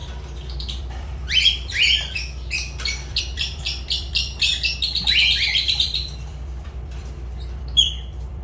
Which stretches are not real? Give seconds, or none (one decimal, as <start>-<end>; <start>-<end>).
0.0-4.5; 5.7-8.4